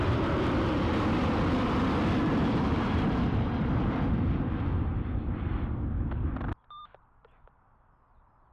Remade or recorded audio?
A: remade